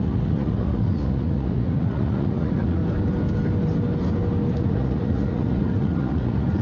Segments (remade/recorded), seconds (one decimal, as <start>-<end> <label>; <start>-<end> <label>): 0.0-2.8 remade; 2.8-4.5 recorded; 4.5-6.6 remade